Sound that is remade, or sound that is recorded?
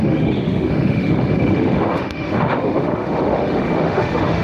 remade